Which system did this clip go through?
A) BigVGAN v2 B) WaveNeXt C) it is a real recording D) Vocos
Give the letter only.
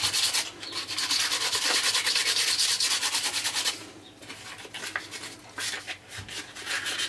C